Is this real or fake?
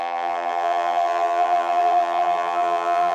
fake